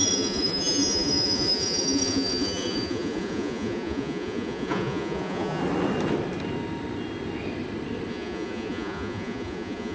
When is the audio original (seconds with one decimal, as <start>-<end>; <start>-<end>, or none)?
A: 5.6-8.1